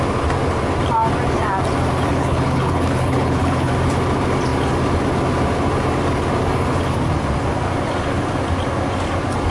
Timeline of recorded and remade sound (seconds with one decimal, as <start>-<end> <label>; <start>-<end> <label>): 0.0-2.1 recorded; 2.1-3.7 remade; 3.7-9.5 recorded